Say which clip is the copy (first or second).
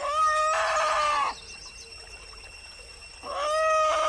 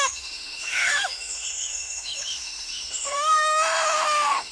second